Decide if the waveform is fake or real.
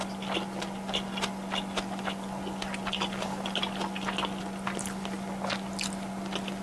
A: real